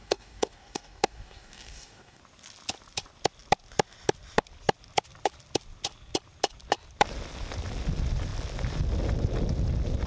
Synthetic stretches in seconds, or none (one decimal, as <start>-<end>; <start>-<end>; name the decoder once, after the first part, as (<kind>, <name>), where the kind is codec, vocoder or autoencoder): 0.0-2.2 (codec, DAC)